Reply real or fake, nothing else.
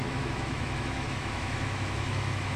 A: fake